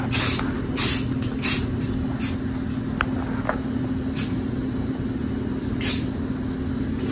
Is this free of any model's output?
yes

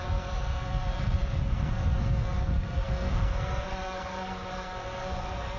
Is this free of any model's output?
no